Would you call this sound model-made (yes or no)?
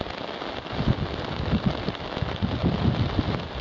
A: no